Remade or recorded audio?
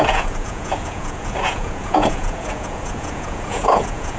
remade